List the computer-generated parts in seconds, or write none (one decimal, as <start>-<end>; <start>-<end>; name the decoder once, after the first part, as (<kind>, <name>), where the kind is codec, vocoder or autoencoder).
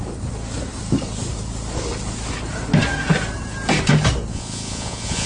4.3-5.3 (vocoder, Vocos)